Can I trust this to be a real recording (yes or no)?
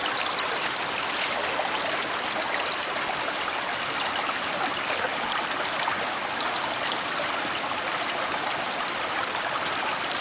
yes